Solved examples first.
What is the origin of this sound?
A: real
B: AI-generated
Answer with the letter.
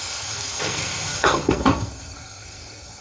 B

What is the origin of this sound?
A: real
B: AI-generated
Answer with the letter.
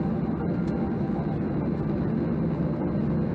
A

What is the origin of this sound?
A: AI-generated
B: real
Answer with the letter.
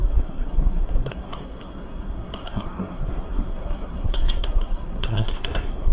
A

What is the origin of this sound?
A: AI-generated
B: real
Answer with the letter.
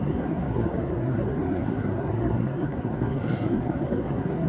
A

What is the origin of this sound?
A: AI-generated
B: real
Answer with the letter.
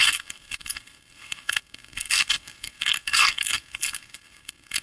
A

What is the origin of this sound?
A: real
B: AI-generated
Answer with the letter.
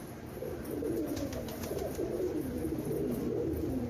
A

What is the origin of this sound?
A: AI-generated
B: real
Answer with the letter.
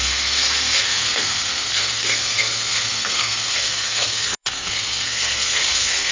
A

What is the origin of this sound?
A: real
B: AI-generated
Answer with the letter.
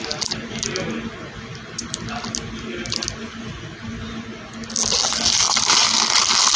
A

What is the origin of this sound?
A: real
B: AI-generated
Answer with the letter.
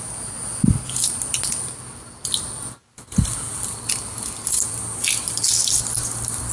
A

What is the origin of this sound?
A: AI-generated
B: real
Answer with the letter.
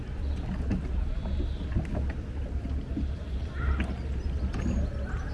B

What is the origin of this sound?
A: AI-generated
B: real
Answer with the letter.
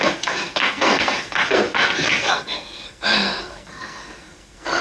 A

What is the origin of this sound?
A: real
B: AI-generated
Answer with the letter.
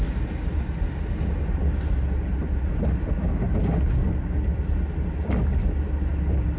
A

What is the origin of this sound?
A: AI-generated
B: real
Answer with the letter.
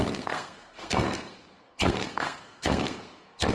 A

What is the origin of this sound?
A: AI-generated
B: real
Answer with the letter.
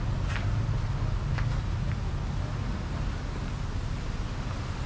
B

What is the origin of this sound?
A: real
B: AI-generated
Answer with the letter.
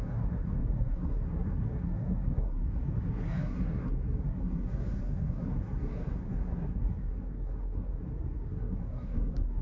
B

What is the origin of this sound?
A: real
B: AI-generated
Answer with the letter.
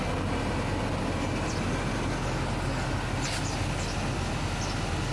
A